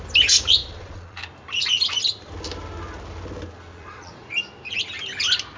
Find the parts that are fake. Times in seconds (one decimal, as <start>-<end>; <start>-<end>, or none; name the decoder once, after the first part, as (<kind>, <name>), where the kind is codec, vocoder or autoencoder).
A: 0.6-1.2 (vocoder, Vocos); 3.7-4.3